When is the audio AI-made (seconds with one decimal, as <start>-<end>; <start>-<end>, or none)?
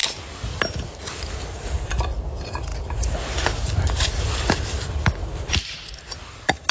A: none